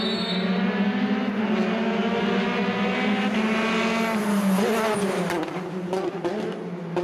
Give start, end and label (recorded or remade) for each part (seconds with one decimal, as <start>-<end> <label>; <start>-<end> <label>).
0.0-7.0 recorded